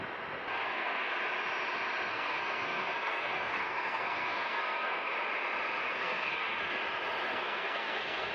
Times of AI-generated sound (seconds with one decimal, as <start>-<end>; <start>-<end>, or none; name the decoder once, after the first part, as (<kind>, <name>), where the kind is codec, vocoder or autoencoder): 0.5-1.1 (codec, SNAC); 2.1-5.1; 5.8-6.8; 7.3-8.3